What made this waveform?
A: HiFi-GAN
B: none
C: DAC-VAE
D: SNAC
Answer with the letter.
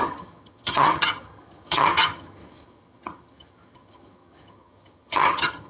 A